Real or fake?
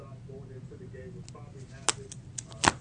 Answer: real